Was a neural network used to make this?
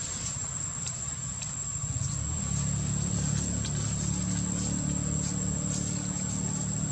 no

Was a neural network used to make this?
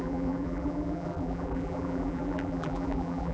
yes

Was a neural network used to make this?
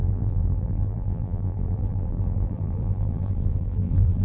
yes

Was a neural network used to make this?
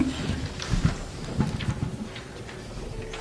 no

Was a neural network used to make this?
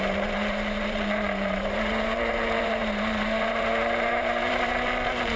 yes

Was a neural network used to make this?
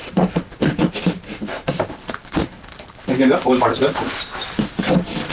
yes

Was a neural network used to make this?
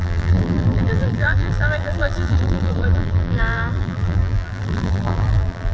yes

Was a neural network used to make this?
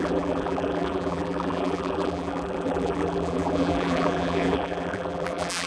yes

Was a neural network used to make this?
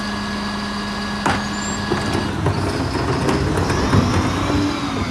no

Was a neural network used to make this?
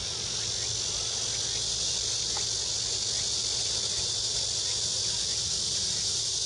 no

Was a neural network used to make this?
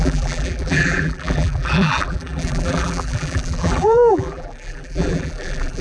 yes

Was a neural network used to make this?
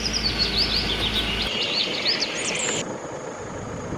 no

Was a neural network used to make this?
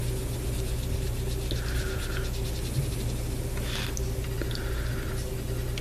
no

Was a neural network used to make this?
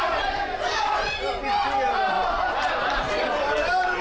yes